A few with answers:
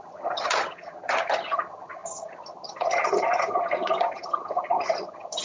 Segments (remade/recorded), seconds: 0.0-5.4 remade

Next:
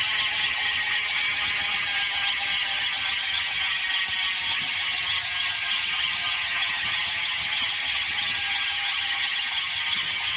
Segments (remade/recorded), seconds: 0.0-3.8 remade; 3.8-4.4 recorded; 4.4-10.4 remade

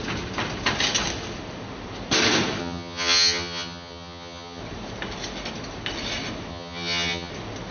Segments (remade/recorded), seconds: 0.0-2.6 recorded; 2.6-4.6 remade; 4.6-6.5 recorded; 6.5-7.3 remade; 7.3-7.7 recorded

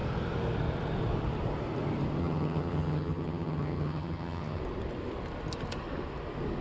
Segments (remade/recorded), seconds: 0.0-2.2 recorded; 2.2-4.6 remade; 4.6-6.6 recorded

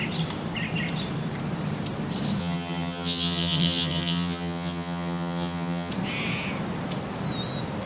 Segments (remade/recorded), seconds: 0.0-2.4 recorded; 2.4-5.9 remade; 5.9-7.9 recorded

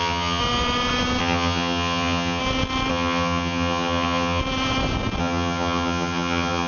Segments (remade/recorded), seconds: 0.0-0.4 remade; 0.4-1.2 recorded; 1.2-2.4 remade; 2.4-2.9 recorded; 2.9-4.4 remade; 4.4-5.2 recorded; 5.2-6.7 remade

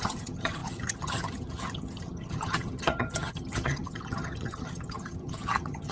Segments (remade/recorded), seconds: 0.0-5.9 remade

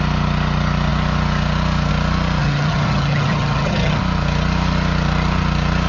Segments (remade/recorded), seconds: 0.0-2.4 recorded; 2.4-4.0 remade; 4.0-5.9 recorded